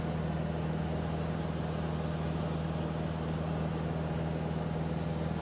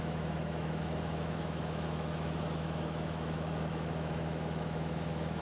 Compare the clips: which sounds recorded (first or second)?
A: first